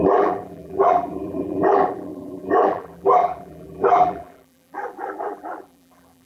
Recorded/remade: remade